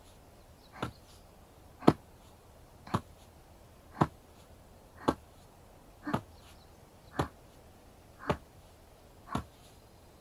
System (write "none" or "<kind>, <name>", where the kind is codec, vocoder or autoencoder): none